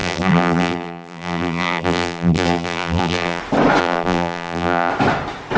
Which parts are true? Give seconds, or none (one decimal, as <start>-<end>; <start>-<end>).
3.4-3.8; 4.9-5.6